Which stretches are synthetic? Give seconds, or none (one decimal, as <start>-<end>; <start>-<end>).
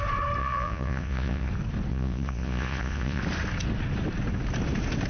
0.4-1.5; 1.9-3.2